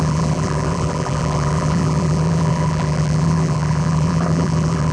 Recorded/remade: remade